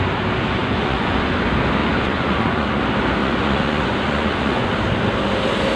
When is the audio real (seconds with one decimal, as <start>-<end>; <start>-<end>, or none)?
0.0-0.6; 1.3-1.8; 2.8-3.2; 4.7-5.8